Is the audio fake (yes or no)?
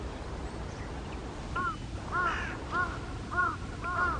no